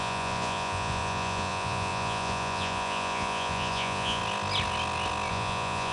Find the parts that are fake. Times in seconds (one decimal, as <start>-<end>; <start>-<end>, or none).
0.0-4.2; 5.3-5.9